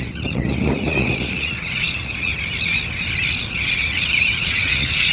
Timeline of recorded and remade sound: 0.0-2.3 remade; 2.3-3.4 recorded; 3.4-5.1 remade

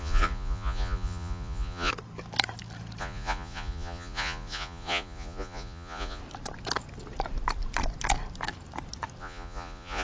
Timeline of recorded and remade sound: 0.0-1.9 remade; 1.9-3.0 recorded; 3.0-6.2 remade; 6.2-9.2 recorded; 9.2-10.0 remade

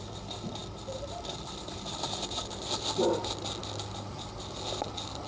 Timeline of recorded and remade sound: 0.0-5.3 recorded

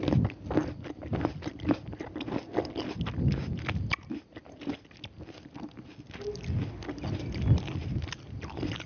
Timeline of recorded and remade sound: 0.0-8.9 recorded

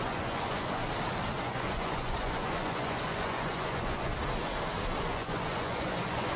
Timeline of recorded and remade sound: 0.0-0.8 remade; 0.8-1.4 recorded; 1.4-4.1 remade; 4.1-5.0 recorded; 5.0-6.4 remade

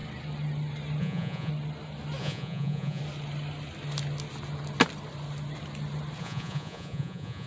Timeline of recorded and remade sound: 0.0-1.0 recorded; 1.0-1.5 remade; 1.5-2.2 recorded; 2.2-3.0 remade; 3.0-6.2 recorded; 6.2-7.5 remade

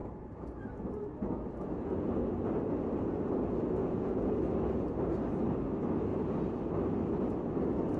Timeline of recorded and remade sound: 0.0-3.8 recorded; 3.8-4.4 remade; 4.4-8.0 recorded